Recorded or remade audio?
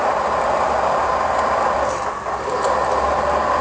recorded